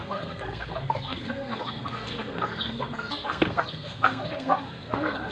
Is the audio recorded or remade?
remade